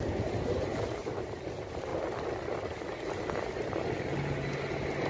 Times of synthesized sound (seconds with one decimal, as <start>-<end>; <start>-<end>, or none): 0.0-1.9

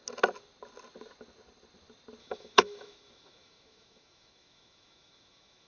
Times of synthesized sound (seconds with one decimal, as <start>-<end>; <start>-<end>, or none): 2.2-5.7

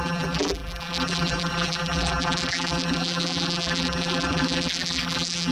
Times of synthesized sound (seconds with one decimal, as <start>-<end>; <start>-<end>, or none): 0.0-5.5

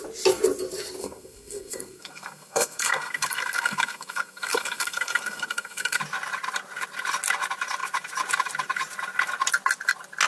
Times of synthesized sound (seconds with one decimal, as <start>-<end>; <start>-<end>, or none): 1.0-6.0

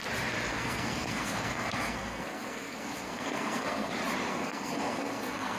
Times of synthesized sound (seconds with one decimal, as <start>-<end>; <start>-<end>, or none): 0.5-3.9; 4.3-5.6

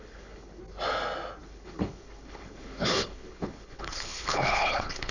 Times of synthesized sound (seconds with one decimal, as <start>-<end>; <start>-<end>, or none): 0.0-0.6; 1.4-5.1